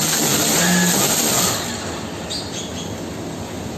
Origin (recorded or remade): recorded